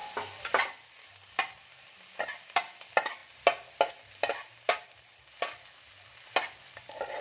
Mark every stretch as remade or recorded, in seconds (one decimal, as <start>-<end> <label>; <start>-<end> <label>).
0.0-7.2 recorded